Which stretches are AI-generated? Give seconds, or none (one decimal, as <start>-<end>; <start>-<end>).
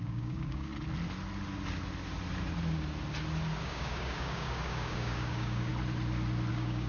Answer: 0.0-0.7; 3.6-5.7; 6.5-6.9